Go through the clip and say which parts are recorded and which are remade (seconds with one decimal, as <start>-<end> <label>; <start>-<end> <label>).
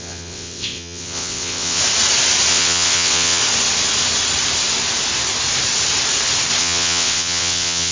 0.0-1.8 remade; 1.8-2.5 recorded; 2.5-3.4 remade; 3.4-6.6 recorded; 6.6-7.9 remade